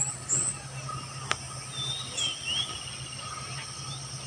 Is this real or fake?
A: real